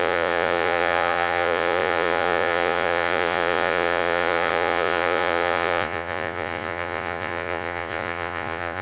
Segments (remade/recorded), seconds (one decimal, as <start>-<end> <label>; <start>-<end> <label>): 0.0-8.8 remade